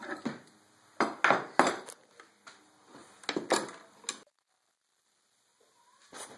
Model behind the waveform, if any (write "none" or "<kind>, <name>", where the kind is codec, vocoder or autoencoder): none